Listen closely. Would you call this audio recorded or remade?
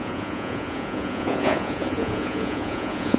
remade